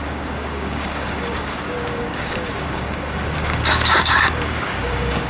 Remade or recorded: remade